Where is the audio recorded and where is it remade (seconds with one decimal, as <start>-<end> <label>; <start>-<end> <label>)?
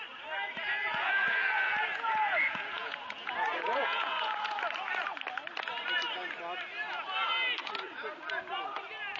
0.0-0.8 recorded; 0.8-4.6 remade; 4.6-9.2 recorded